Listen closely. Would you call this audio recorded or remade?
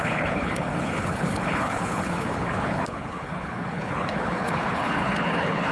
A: remade